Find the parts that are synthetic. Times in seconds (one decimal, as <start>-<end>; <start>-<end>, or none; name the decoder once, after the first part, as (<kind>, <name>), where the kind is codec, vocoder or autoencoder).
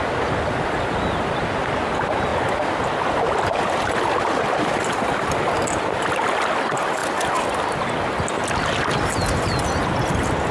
none